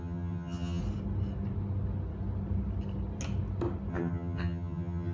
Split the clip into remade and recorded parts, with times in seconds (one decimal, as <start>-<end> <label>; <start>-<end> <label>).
0.0-0.8 remade; 0.8-3.9 recorded; 3.9-5.1 remade

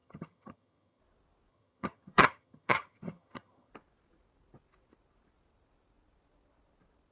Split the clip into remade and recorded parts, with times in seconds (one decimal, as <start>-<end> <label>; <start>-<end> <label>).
0.0-1.0 remade; 1.0-1.5 recorded; 1.5-3.7 remade; 3.7-7.1 recorded

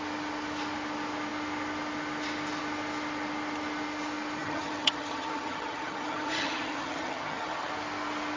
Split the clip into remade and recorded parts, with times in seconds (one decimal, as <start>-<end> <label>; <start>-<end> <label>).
0.0-4.4 recorded; 4.4-7.7 remade; 7.7-8.4 recorded

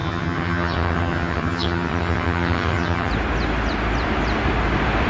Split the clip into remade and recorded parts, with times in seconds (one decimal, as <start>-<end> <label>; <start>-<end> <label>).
0.0-3.1 remade; 3.1-5.1 recorded